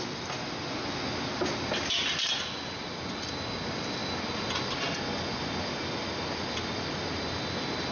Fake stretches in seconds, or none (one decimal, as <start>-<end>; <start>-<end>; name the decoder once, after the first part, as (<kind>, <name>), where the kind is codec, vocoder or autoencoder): none